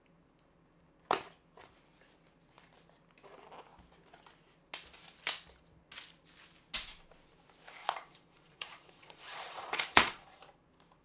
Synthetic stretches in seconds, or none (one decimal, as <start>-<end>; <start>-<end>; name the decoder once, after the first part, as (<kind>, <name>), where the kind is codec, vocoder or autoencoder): 7.8-10.4 (vocoder, Vocos)